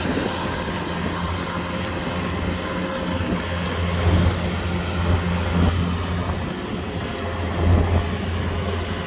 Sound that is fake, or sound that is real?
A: real